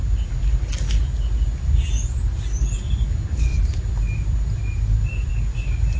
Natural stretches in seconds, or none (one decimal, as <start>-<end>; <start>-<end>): 0.0-6.0